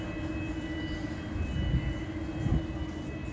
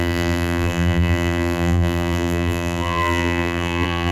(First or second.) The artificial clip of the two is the second